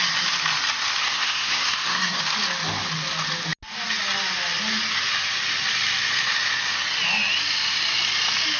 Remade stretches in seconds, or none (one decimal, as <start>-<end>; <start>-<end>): 1.0-2.2